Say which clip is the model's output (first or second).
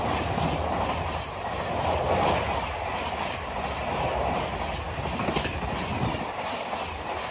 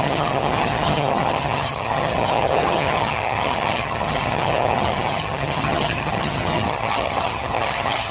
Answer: second